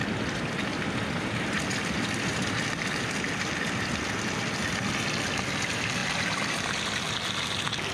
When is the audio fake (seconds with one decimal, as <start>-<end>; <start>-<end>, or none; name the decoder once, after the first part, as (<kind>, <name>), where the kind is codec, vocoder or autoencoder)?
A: none